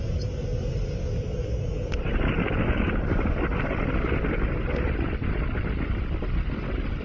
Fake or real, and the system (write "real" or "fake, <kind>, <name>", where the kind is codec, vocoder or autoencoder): real